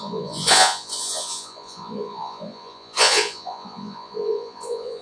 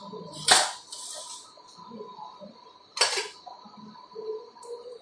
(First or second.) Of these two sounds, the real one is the second